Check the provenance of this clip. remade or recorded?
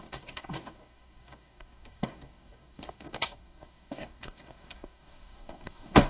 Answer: remade